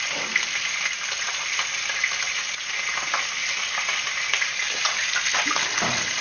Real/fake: real